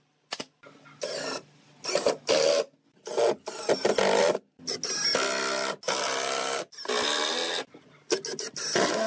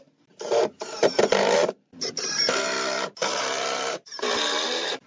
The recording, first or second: first